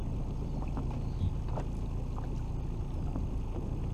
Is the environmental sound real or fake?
real